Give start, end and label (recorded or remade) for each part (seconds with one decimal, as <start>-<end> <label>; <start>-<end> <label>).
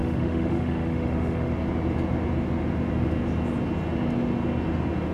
0.0-1.5 remade; 1.5-5.1 recorded